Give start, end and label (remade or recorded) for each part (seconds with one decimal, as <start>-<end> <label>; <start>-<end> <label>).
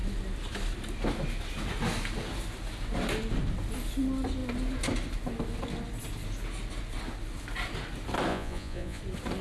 0.0-8.3 recorded; 8.3-9.0 remade; 9.0-9.4 recorded